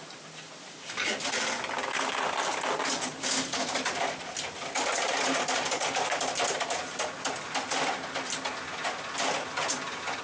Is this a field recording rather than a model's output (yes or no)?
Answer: yes